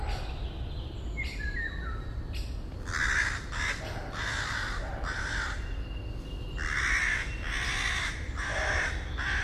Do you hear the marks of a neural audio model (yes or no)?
no